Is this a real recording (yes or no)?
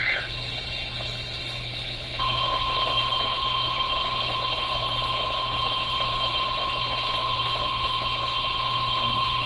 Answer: no